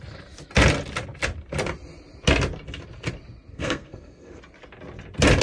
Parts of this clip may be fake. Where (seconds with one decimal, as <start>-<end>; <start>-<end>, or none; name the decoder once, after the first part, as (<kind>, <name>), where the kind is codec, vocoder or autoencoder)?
3.5-4.4 (codec, SNAC)